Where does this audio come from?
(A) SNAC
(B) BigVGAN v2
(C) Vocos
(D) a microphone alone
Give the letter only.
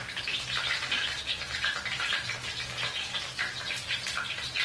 D